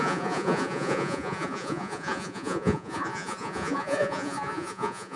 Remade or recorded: remade